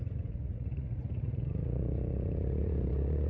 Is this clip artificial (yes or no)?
yes